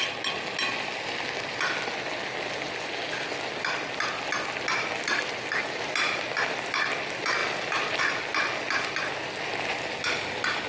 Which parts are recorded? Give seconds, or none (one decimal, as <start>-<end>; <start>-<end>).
0.0-7.4; 8.0-10.7